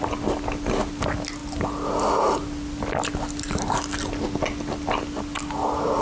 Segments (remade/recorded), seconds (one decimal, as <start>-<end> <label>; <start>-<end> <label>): 0.0-6.0 recorded